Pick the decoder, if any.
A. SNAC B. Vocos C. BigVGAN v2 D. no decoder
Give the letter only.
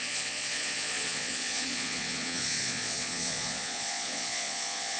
B